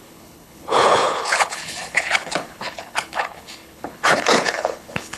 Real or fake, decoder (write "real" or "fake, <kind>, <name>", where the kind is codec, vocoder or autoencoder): fake, codec, HILCodec